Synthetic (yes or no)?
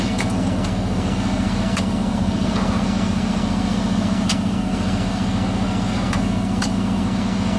yes